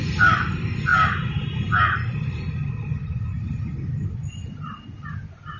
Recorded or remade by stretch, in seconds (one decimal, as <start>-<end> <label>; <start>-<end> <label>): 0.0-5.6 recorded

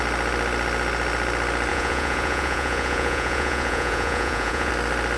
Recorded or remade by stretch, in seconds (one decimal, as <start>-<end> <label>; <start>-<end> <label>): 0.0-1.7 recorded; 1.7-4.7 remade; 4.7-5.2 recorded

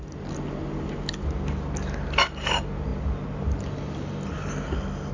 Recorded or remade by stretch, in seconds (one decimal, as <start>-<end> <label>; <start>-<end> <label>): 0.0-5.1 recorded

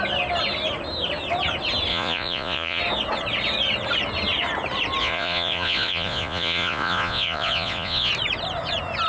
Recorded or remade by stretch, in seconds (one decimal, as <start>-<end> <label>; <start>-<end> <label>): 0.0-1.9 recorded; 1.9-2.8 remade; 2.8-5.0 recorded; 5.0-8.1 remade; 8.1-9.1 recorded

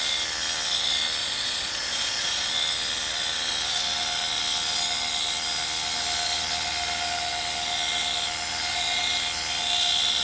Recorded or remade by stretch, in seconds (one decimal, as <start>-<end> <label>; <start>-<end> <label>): 0.0-1.2 recorded; 1.2-2.5 remade; 2.5-10.2 recorded

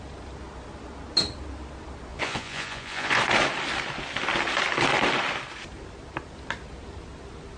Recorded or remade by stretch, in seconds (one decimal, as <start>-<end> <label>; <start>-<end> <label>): 0.0-2.1 recorded; 2.1-3.2 remade; 3.2-7.6 recorded

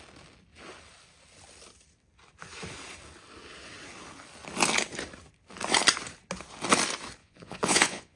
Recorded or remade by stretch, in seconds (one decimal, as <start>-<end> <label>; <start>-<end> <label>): 0.0-7.2 recorded; 7.2-8.2 remade

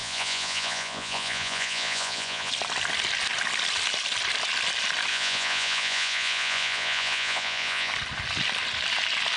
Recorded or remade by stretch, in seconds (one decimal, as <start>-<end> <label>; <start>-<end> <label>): 0.0-2.5 remade; 2.5-5.1 recorded; 5.1-7.9 remade; 7.9-9.4 recorded